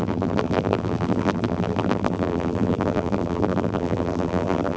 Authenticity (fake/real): fake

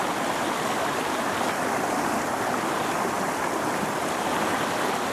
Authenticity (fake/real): real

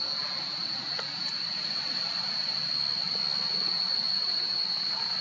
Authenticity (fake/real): real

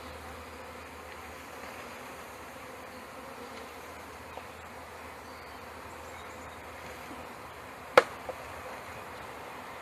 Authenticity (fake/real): fake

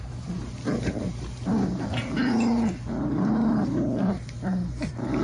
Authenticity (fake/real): fake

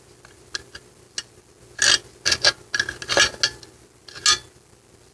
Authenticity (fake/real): real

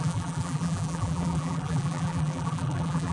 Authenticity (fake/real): fake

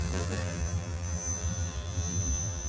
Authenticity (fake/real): fake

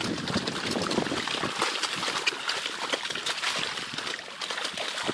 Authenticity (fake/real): real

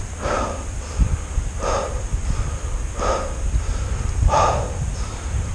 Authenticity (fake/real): real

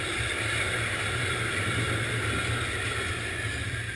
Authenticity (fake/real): fake